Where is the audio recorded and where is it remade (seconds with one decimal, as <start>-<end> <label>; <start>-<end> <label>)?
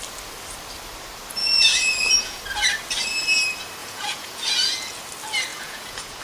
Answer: 0.0-1.4 recorded; 1.4-2.4 remade; 2.4-3.8 recorded; 3.8-5.0 remade; 5.0-5.5 recorded; 5.5-6.2 remade